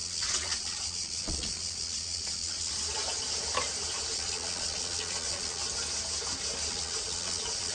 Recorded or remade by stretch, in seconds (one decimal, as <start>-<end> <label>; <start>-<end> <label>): 0.0-2.7 remade; 2.7-4.1 recorded; 4.1-5.6 remade; 5.6-6.7 recorded; 6.7-7.7 remade